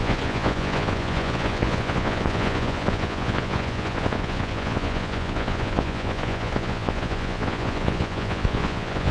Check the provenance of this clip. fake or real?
fake